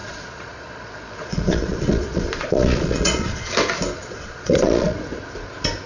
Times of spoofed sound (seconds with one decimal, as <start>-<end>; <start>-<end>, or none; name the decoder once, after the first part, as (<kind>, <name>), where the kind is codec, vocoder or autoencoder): 0.0-3.5 (vocoder, Vocos); 4.0-5.2